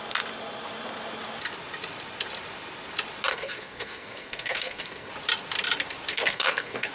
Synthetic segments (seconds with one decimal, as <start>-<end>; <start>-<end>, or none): 3.3-5.1; 6.1-6.9